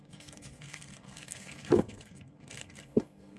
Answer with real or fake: fake